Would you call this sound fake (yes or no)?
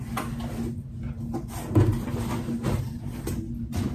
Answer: no